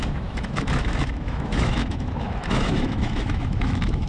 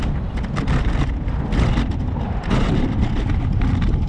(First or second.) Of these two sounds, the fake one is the first